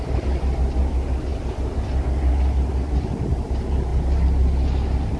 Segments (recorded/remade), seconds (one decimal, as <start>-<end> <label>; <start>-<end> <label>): 0.0-5.2 recorded